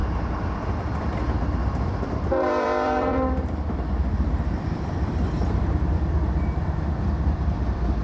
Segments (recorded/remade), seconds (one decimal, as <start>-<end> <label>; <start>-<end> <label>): 0.0-8.0 remade

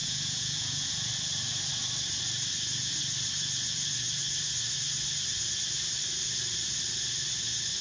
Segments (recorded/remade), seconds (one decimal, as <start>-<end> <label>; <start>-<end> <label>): 0.0-1.1 remade; 1.1-7.8 recorded

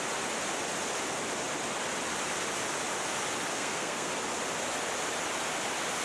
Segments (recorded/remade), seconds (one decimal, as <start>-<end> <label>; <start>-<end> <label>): 0.0-3.5 recorded; 3.5-4.1 remade; 4.1-6.0 recorded

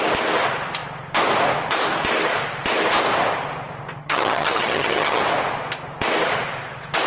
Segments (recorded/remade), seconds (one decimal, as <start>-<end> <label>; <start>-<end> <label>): 0.0-4.0 recorded; 4.0-5.2 remade; 5.2-7.1 recorded

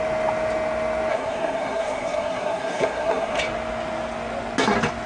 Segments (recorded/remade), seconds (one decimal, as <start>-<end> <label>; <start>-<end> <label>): 0.0-1.1 recorded; 1.1-3.4 remade; 3.4-5.1 recorded

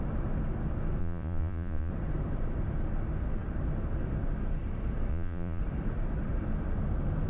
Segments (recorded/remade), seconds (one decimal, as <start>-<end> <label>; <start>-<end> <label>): 0.0-1.0 recorded; 1.0-1.9 remade; 1.9-5.1 recorded; 5.1-5.6 remade; 5.6-7.3 recorded